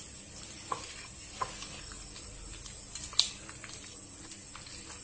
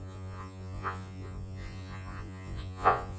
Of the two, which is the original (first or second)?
first